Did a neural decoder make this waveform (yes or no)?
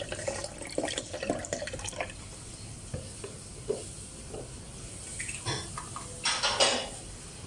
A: no